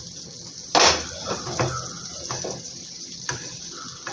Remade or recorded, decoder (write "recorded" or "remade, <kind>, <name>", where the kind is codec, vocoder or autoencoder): recorded